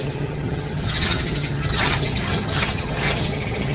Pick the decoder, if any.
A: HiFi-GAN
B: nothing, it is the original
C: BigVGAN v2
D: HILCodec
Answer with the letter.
A